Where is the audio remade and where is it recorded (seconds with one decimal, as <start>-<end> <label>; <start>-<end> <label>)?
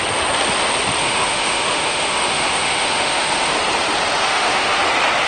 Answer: 0.0-1.0 recorded; 1.0-3.5 remade; 3.5-4.2 recorded; 4.2-4.8 remade; 4.8-5.3 recorded